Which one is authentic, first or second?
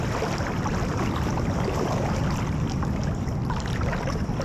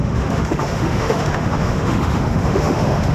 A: first